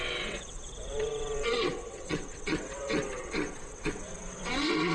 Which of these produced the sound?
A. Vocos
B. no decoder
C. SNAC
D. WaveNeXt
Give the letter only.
D